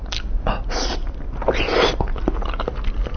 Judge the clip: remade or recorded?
recorded